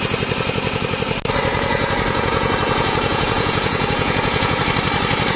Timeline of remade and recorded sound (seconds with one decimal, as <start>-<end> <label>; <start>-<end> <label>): 0.0-1.5 recorded; 1.5-4.6 remade; 4.6-5.4 recorded